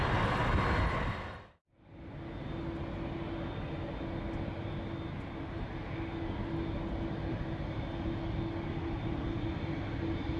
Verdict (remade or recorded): recorded